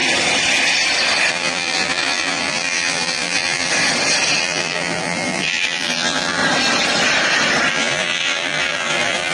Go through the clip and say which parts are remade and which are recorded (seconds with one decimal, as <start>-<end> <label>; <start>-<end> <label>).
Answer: 0.0-1.3 recorded; 1.3-3.7 remade; 3.7-4.4 recorded; 4.4-6.4 remade; 6.4-7.7 recorded; 7.7-9.3 remade